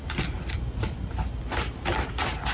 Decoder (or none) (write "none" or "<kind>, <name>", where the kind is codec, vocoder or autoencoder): none